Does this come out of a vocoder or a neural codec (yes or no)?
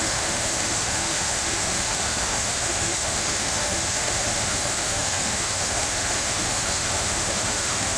yes